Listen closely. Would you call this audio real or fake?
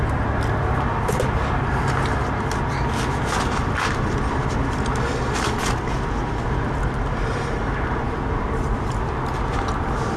real